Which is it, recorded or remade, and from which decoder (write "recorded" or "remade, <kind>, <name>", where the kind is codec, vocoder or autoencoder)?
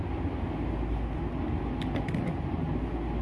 recorded